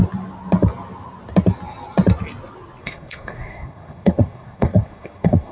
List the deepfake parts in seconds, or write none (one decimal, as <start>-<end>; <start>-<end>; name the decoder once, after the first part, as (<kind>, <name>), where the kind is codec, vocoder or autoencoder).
2.8-5.5 (codec, SNAC)